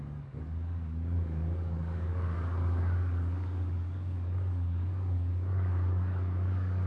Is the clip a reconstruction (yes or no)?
yes